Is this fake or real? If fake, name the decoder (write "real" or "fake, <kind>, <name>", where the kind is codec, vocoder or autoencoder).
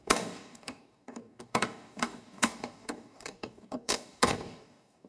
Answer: fake, codec, DAC